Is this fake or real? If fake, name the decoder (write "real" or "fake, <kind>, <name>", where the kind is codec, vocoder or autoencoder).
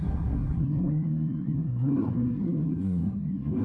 fake, codec, SNAC